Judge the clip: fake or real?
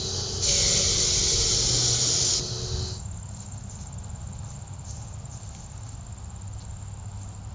real